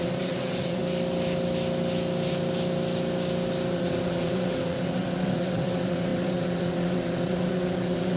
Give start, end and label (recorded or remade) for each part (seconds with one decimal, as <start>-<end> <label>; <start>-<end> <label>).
0.0-0.8 remade; 0.8-3.7 recorded; 3.7-8.2 remade